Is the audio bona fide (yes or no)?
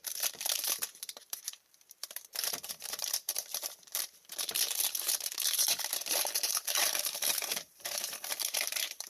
no